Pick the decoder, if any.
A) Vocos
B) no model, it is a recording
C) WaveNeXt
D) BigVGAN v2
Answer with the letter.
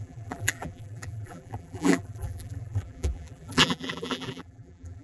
D